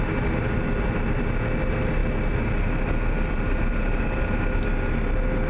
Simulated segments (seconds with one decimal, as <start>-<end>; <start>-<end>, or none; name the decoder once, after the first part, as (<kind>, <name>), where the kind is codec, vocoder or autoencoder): none